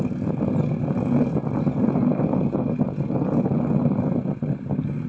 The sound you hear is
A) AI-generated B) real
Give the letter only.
B